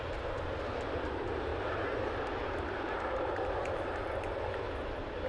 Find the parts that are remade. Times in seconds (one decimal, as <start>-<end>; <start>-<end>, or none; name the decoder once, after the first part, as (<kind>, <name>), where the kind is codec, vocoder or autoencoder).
none